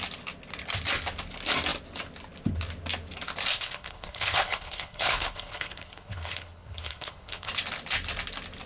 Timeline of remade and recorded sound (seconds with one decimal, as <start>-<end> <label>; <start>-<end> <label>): 0.0-3.5 recorded; 3.5-7.5 remade; 7.5-8.7 recorded